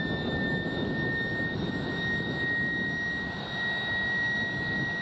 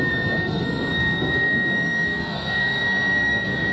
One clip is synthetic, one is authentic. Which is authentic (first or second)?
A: first